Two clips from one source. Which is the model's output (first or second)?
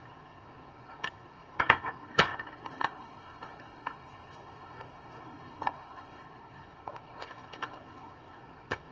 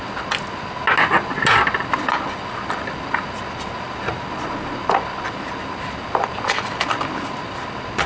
first